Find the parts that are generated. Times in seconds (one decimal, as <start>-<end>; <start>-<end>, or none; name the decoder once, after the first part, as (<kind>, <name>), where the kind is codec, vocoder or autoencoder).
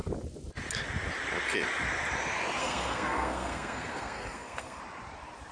2.6-4.8 (codec, SNAC)